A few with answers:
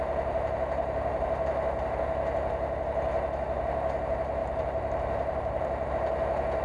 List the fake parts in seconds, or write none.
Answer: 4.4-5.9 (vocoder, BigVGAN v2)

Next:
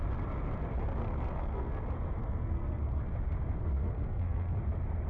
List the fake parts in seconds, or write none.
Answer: 1.0-1.8 (codec, SNAC); 2.2-3.0; 3.6-4.6

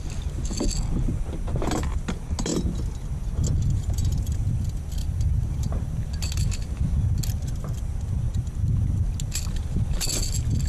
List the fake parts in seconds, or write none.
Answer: 5.0-6.2 (vocoder, BigVGAN v2)

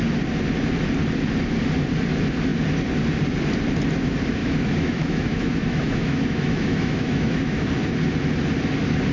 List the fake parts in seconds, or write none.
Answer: 4.4-7.7 (autoencoder, DAC-VAE)